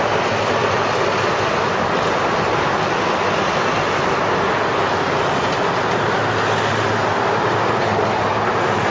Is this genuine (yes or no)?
yes